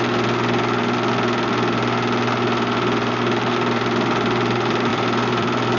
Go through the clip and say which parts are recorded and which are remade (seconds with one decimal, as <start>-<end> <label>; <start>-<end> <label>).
0.0-4.9 recorded; 4.9-5.8 remade